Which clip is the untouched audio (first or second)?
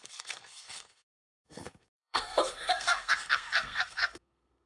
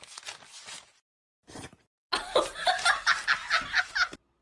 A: second